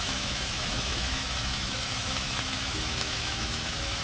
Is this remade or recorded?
remade